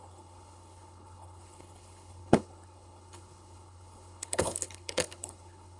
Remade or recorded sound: remade